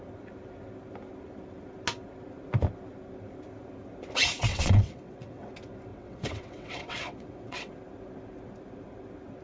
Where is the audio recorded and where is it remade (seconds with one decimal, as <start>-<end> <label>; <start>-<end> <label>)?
0.0-4.5 recorded; 4.5-5.5 remade; 5.5-5.9 recorded; 5.9-7.7 remade; 7.7-9.4 recorded